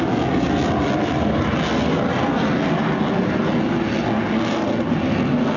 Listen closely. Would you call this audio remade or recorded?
recorded